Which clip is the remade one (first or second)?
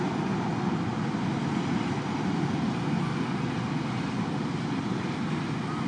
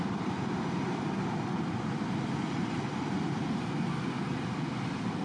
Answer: second